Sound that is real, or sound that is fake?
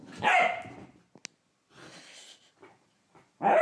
real